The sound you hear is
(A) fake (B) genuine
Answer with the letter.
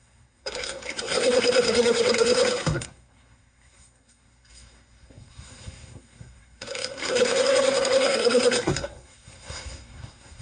A